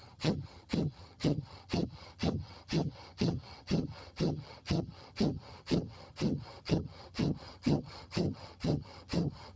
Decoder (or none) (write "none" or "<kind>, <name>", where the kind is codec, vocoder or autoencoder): vocoder, HiFi-GAN